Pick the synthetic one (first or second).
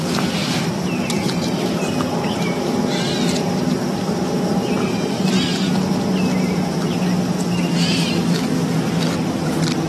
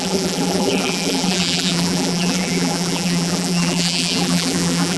second